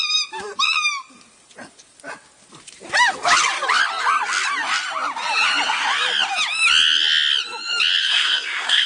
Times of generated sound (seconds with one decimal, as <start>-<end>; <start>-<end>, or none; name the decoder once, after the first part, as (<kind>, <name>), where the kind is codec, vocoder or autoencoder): 8.0-8.9 (codec, SNAC)